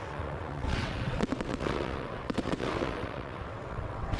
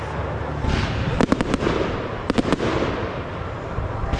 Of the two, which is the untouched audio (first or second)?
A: second